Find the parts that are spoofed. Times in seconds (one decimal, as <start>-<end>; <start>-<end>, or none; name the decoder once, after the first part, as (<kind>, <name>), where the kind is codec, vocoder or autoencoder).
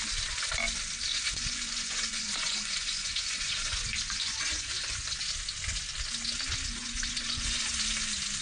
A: 1.1-5.3 (vocoder, Vocos); 6.8-7.6